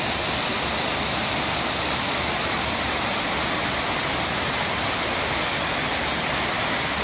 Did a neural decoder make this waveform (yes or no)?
no